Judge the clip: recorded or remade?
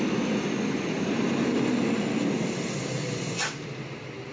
recorded